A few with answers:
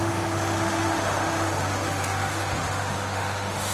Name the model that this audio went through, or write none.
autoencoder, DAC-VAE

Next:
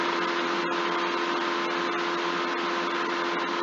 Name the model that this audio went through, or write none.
none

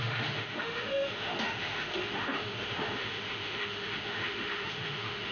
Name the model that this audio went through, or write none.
autoencoder, DAC-VAE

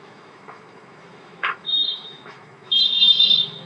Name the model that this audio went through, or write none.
autoencoder, DAC-VAE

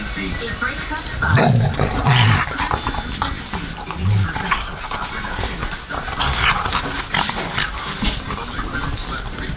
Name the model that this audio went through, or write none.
none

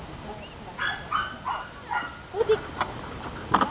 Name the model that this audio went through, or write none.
none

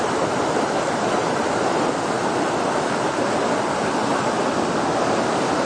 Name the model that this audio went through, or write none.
none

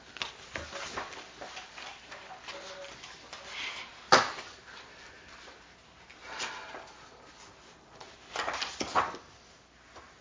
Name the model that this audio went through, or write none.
none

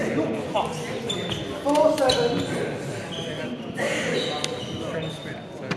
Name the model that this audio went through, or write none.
none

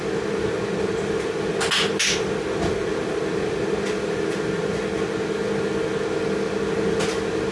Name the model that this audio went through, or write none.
none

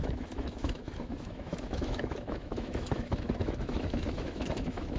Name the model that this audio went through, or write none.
autoencoder, DAC-VAE